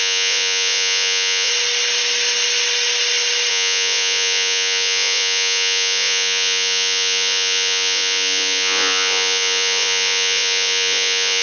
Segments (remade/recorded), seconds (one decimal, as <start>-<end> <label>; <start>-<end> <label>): 0.0-1.5 remade; 1.5-3.5 recorded; 3.5-11.4 remade